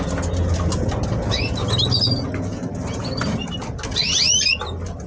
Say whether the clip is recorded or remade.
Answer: recorded